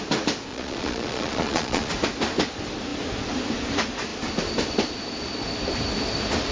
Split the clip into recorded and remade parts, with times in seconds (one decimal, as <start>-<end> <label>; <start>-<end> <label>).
0.0-0.5 recorded; 0.5-1.9 remade; 1.9-6.5 recorded